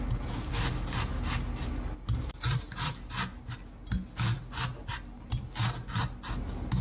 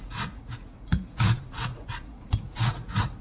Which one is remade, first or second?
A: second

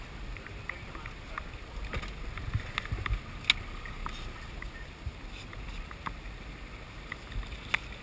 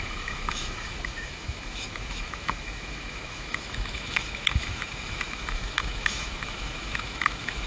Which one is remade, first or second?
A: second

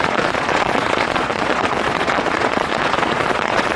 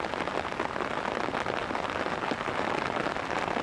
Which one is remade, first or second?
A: first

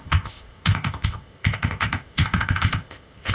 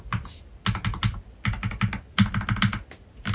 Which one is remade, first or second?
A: first